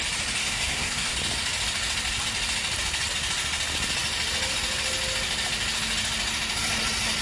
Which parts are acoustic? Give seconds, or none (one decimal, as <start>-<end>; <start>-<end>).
0.0-0.4; 1.1-7.2